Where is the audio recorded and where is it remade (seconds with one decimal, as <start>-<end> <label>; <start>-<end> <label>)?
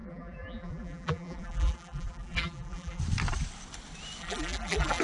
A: 0.0-3.0 remade; 3.0-4.2 recorded; 4.2-5.0 remade